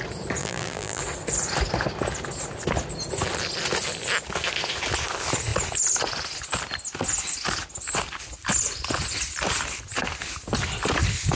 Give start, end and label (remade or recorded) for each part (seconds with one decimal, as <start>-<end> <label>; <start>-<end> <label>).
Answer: 0.0-0.4 recorded; 0.4-1.0 remade; 1.0-11.3 recorded